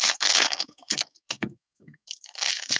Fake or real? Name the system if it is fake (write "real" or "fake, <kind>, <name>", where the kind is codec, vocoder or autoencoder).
fake, codec, SNAC